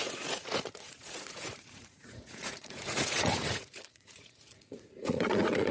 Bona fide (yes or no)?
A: no